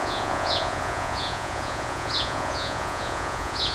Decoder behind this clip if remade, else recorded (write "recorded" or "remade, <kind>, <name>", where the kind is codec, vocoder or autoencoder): remade, vocoder, Vocos